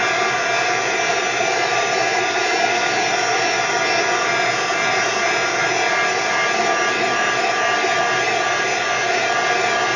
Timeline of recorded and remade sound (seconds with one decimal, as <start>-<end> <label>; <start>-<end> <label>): 0.0-10.0 recorded